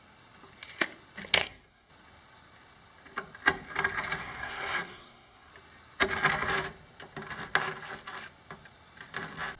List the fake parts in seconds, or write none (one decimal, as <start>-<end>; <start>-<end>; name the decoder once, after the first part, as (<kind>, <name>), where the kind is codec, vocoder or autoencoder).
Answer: 1.4-1.9 (codec, SNAC); 4.2-5.5